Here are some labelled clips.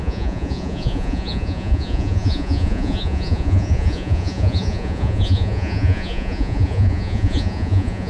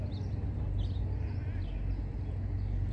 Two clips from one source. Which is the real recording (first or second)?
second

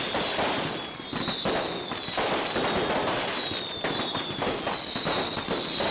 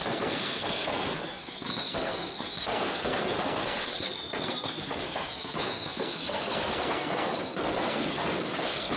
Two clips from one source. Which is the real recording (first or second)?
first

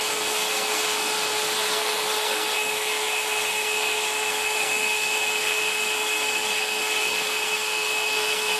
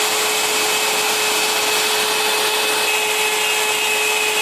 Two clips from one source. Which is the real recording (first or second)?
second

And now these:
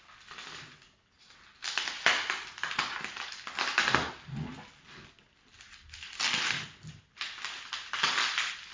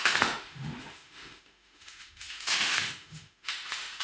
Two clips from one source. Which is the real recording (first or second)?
first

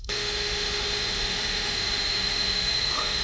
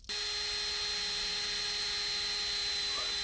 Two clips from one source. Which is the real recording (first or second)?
second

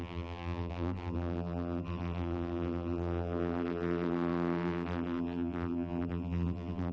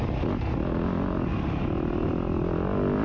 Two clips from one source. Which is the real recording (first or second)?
second